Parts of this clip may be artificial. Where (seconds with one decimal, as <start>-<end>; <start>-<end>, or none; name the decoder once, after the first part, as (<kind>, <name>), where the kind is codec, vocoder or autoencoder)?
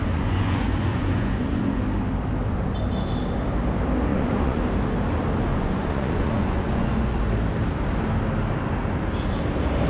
0.0-1.8 (vocoder, Vocos); 4.1-4.6; 5.5-7.2